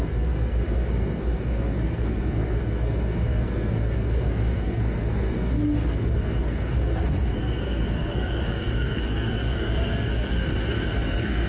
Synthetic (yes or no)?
yes